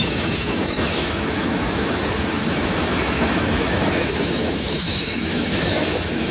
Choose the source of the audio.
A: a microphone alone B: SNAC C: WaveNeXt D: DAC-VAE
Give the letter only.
D